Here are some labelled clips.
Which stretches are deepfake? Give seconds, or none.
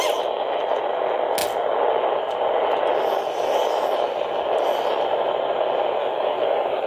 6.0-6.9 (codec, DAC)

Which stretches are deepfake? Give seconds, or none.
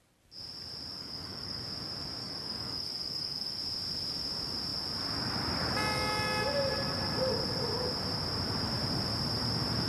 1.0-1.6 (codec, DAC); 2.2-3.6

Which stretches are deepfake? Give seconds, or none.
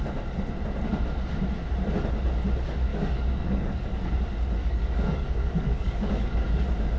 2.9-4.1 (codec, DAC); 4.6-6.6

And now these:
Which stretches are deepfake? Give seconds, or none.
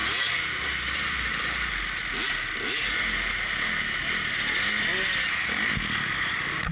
none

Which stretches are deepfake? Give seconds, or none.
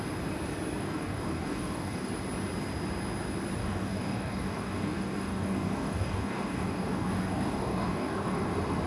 0.8-2.1 (codec, DAC); 3.6-8.5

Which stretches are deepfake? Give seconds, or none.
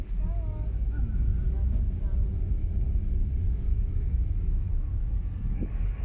0.0-1.3 (codec, DAC); 3.1-6.0